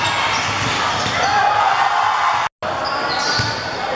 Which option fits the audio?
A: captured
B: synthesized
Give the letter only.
A